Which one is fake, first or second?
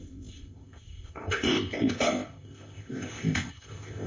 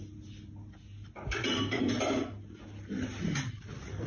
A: first